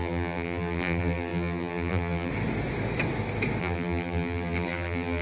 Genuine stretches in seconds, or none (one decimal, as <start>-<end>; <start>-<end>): 2.3-3.6